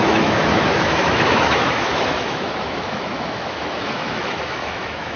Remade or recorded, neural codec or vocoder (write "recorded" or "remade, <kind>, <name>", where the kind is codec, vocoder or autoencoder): remade, autoencoder, DAC-VAE